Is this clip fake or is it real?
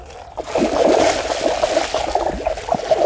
real